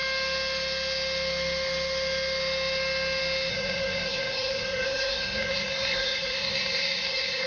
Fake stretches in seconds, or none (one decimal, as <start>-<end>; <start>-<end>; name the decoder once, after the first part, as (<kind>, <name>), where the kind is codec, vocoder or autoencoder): 3.5-7.5 (codec, SNAC)